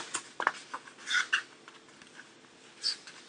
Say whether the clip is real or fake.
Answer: real